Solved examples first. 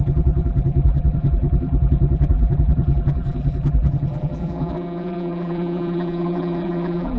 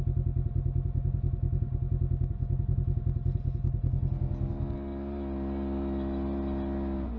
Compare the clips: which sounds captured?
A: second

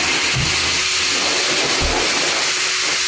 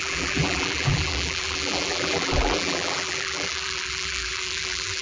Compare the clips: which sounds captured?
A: first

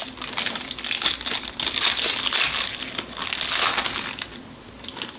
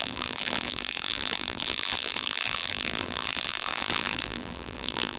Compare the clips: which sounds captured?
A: first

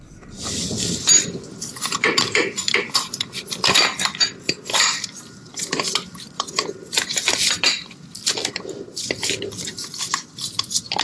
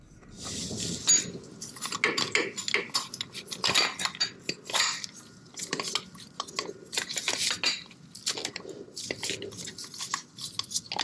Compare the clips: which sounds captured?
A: second